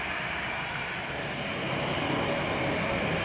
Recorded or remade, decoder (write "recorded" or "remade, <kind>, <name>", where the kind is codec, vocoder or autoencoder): recorded